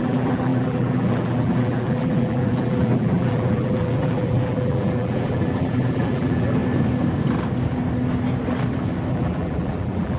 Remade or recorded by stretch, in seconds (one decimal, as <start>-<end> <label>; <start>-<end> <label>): 0.0-6.6 remade; 6.6-9.1 recorded; 9.1-10.2 remade